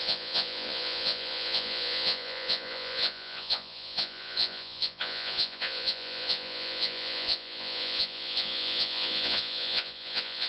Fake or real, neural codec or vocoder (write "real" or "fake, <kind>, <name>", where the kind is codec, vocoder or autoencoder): fake, vocoder, Vocos